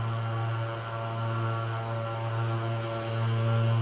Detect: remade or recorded recorded